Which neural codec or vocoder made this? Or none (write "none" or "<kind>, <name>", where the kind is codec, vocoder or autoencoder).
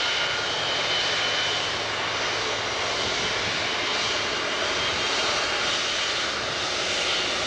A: none